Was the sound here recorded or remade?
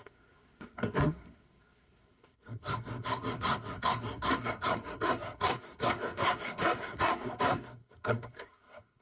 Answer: remade